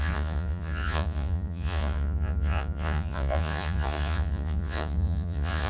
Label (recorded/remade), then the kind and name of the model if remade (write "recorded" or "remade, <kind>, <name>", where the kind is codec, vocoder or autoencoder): remade, vocoder, Vocos